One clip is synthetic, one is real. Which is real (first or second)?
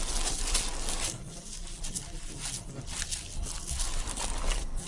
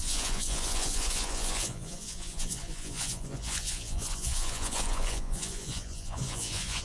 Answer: first